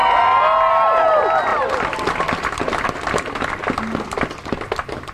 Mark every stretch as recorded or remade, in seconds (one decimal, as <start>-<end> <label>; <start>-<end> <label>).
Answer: 0.0-5.1 recorded